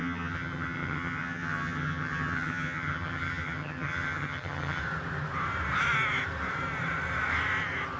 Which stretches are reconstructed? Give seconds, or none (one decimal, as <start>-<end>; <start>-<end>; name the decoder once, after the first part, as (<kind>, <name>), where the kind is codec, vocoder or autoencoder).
0.0-4.8 (vocoder, HiFi-GAN)